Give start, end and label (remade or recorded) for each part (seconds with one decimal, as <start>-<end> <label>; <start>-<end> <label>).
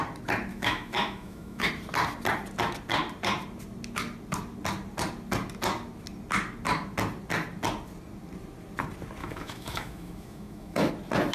0.0-0.5 recorded; 0.5-1.7 remade; 1.7-9.2 recorded; 9.2-10.9 remade; 10.9-11.3 recorded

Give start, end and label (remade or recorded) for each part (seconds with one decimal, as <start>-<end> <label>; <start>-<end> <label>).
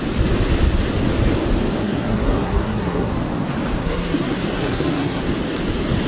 0.0-1.8 recorded; 1.8-3.1 remade; 3.1-3.8 recorded; 3.8-5.2 remade; 5.2-6.1 recorded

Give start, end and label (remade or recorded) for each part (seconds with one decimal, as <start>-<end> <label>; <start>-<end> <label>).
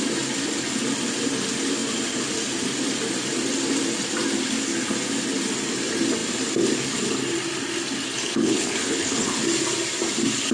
0.0-8.2 recorded; 8.2-9.4 remade; 9.4-10.5 recorded